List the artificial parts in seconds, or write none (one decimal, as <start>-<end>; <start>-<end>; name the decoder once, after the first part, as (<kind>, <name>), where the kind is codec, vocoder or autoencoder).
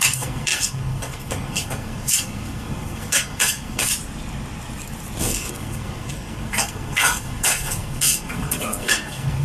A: 0.0-3.9 (codec, SNAC); 5.2-9.4